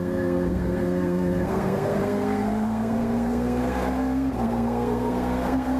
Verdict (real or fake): fake